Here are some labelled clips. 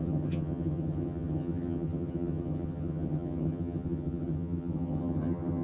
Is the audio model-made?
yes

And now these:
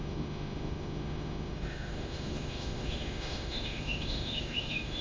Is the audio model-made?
yes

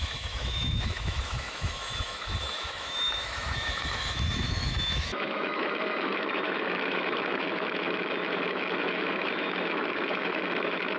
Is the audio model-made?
yes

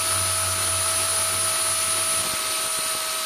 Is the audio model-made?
no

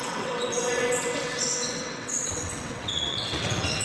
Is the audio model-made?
yes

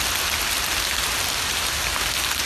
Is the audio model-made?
no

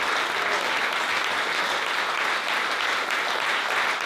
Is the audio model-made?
no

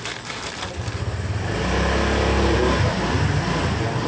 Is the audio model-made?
no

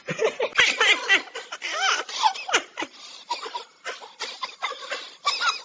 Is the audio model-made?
no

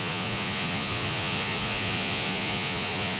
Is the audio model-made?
yes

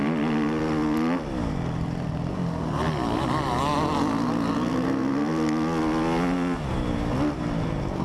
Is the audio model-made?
no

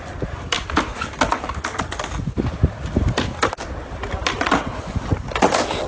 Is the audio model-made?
no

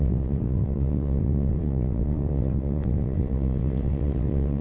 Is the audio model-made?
yes